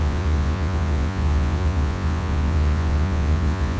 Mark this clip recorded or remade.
remade